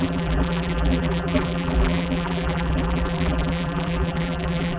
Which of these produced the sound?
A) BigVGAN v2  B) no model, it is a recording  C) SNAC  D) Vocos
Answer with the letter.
A